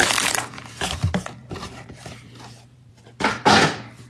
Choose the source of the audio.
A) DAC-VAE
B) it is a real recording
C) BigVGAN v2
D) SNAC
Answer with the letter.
C